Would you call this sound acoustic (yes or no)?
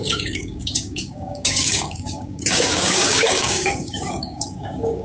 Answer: no